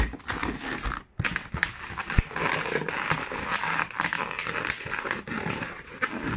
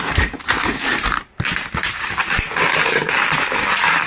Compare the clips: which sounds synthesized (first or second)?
second